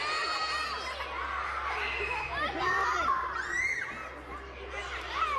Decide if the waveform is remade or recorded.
recorded